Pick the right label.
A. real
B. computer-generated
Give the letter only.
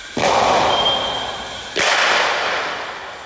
A